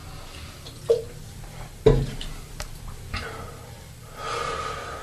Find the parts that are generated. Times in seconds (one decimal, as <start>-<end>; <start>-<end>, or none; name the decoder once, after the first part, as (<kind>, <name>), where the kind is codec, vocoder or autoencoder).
none

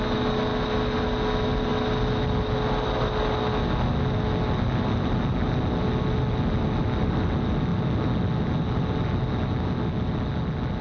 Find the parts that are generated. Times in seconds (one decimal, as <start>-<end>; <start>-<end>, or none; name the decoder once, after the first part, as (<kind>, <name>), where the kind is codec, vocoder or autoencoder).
none

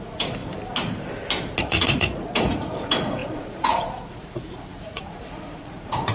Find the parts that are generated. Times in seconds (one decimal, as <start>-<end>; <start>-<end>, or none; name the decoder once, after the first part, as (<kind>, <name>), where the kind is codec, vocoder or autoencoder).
0.0-0.4 (vocoder, Vocos); 1.6-6.1

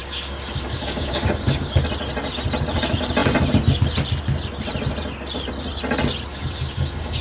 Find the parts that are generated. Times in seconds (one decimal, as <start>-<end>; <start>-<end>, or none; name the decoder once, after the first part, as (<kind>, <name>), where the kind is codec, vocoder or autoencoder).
0.0-1.8 (codec, DAC); 6.3-7.2

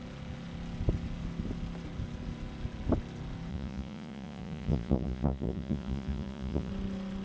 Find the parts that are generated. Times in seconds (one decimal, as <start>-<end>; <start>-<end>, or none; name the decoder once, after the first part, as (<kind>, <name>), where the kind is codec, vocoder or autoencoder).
3.5-6.7 (vocoder, Vocos)

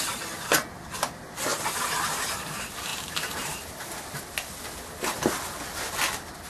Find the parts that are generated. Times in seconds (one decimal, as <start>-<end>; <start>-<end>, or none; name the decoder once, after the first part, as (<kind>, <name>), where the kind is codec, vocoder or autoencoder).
1.5-2.3 (vocoder, BigVGAN v2); 2.9-3.7

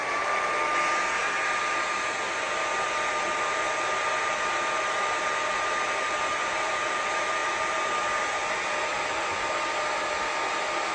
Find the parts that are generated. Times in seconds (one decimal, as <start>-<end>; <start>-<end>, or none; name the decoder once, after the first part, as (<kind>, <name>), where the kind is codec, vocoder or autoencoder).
none